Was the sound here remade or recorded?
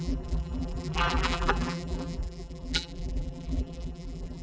remade